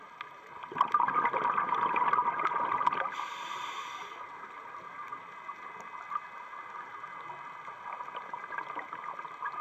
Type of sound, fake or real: real